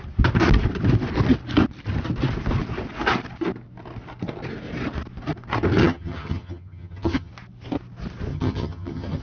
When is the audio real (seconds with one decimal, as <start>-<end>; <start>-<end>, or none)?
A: 0.0-5.8; 7.3-8.3